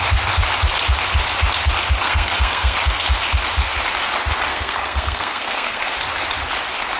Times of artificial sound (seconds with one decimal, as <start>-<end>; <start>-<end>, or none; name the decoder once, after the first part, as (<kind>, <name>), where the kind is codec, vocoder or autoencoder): 2.0-2.8 (codec, SNAC); 4.5-5.8